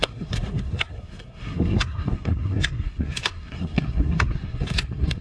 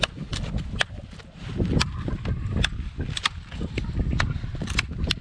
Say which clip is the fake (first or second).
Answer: first